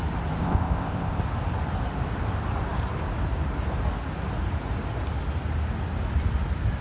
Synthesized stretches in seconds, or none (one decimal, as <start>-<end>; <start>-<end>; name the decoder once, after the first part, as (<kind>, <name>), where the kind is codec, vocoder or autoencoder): 0.4-1.2 (codec, ZipCodec)